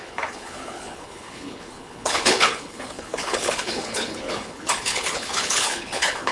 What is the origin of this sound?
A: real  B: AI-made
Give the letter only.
B